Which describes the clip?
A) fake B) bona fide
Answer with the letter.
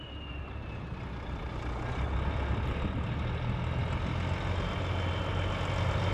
B